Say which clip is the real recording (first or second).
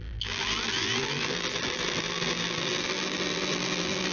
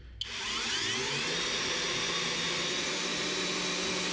second